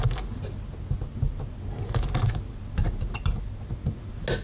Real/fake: real